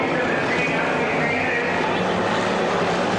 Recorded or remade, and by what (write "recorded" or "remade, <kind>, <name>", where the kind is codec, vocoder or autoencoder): recorded